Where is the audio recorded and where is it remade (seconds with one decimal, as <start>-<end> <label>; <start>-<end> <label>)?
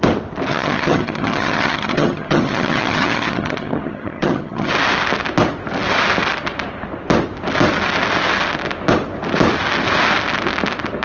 0.0-0.5 recorded; 0.5-4.7 remade; 4.7-11.0 recorded